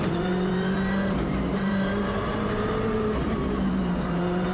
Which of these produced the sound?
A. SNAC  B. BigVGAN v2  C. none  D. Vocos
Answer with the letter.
B